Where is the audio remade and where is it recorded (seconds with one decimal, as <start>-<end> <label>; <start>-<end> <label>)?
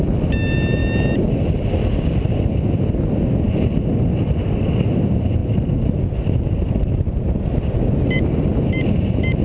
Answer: 0.0-9.4 recorded